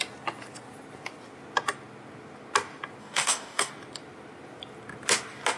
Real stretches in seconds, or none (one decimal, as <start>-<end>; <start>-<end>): 0.0-3.0; 3.7-5.6